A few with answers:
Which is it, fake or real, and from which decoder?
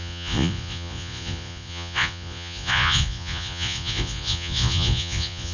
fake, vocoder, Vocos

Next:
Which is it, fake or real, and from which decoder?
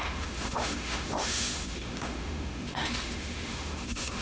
fake, autoencoder, DAC-VAE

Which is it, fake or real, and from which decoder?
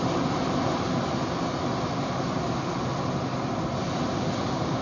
real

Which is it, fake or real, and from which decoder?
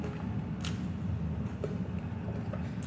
real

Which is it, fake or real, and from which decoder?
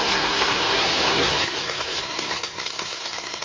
fake, codec, SNAC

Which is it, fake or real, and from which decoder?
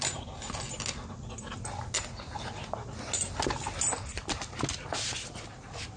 real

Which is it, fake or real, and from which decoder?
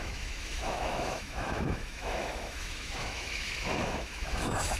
fake, autoencoder, DAC-VAE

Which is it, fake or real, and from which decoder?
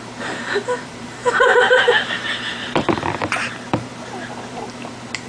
fake, vocoder, BigVGAN v2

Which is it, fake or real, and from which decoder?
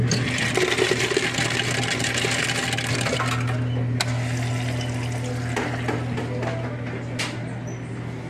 real